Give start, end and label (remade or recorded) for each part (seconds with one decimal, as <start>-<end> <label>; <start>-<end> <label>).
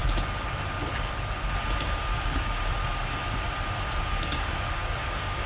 0.0-1.8 recorded; 1.8-2.8 remade; 2.8-4.1 recorded; 4.1-5.5 remade